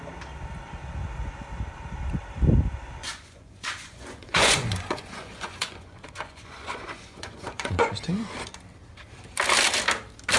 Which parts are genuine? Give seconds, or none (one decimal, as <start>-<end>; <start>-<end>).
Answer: 0.0-3.0; 8.0-10.4